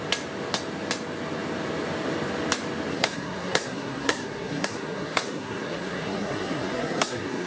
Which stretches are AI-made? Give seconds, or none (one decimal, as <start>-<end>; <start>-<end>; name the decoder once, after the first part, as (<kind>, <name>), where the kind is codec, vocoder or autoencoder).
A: 2.9-7.5 (codec, SNAC)